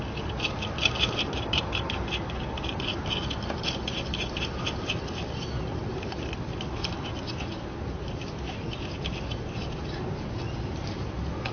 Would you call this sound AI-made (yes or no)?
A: no